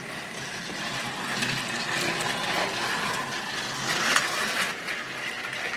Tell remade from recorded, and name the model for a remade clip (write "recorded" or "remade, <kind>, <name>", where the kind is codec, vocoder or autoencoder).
recorded